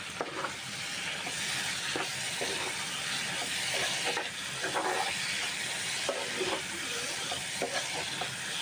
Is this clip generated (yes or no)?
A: no